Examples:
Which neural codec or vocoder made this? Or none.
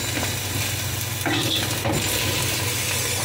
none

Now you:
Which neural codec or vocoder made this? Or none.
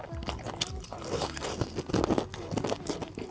none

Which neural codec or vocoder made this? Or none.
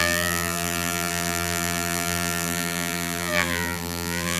vocoder, BigVGAN v2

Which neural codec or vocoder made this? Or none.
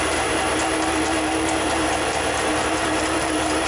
vocoder, BigVGAN v2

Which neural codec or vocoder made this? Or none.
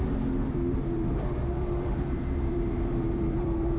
vocoder, BigVGAN v2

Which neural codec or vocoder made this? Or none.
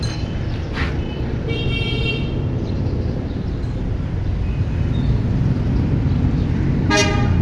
none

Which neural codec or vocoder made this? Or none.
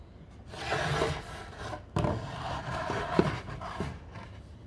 vocoder, BigVGAN v2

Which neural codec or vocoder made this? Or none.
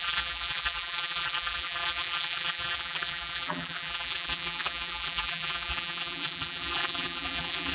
vocoder, BigVGAN v2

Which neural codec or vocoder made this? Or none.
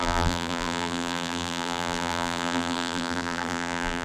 vocoder, BigVGAN v2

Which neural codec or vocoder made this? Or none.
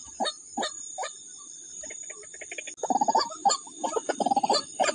none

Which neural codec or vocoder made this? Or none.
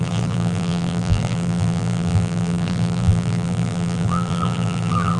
vocoder, BigVGAN v2